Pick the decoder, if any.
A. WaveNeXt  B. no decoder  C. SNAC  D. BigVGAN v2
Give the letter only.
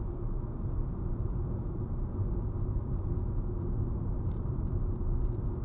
B